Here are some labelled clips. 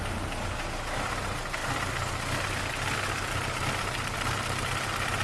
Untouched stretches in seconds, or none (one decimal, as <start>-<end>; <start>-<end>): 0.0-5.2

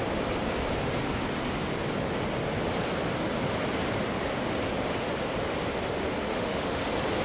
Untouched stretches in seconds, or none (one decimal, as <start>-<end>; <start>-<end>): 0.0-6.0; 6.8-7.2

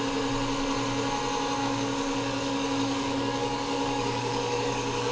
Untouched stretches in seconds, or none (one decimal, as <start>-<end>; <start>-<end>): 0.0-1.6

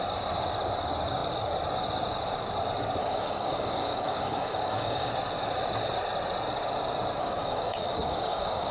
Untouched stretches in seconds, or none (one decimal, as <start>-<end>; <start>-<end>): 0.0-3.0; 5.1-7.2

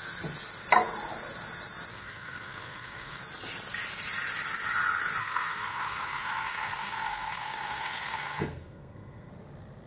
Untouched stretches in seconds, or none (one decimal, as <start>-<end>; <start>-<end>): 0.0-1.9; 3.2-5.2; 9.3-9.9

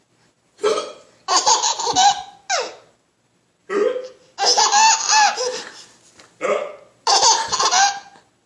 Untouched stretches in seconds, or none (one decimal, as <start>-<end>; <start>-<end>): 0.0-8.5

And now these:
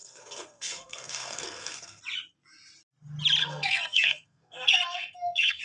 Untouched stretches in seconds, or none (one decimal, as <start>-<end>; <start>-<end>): 2.0-3.4

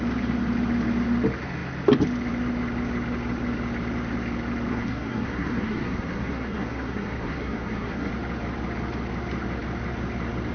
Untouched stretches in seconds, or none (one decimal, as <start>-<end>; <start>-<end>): 0.0-4.7; 8.1-10.5